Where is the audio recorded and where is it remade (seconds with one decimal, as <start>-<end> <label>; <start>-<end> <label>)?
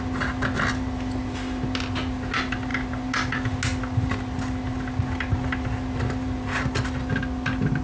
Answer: 0.0-7.8 recorded